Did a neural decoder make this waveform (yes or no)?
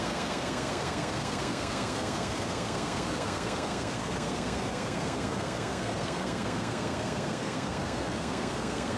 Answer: yes